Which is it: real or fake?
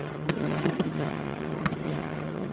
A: fake